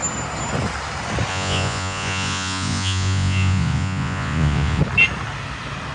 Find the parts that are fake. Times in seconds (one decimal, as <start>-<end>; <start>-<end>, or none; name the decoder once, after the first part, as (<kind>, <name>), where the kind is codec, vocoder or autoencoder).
1.3-4.8 (vocoder, Vocos)